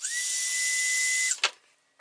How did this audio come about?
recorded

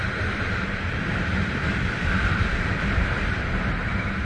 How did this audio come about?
remade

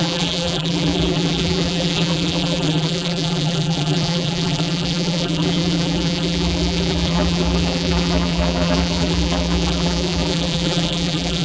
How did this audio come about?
remade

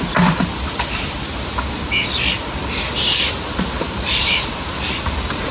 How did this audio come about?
remade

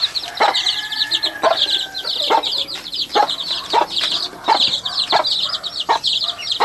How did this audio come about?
recorded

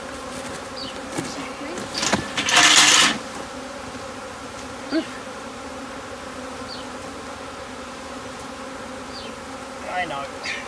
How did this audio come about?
recorded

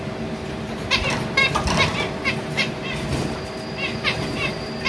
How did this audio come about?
remade